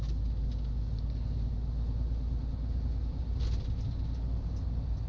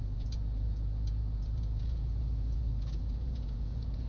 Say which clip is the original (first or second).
first